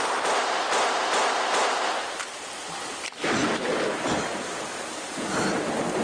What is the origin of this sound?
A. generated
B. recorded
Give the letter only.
B